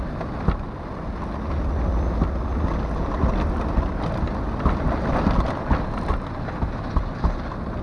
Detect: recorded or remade recorded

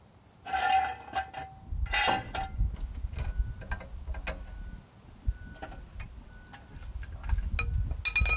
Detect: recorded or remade recorded